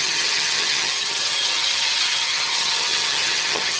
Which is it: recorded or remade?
remade